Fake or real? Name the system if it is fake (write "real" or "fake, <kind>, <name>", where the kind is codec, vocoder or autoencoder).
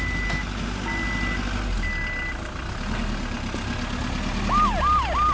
real